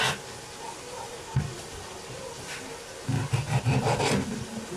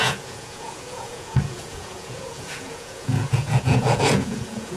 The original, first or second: first